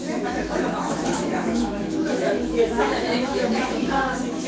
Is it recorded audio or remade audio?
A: remade